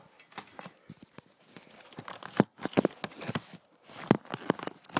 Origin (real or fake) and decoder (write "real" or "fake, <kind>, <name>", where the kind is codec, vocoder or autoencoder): real